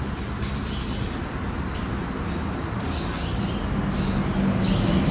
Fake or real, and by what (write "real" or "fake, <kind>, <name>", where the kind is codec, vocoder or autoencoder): real